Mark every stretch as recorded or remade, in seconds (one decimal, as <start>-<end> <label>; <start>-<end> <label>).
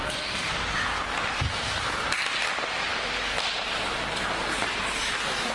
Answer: 0.0-5.5 recorded